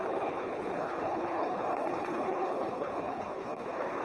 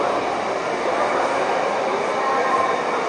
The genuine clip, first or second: second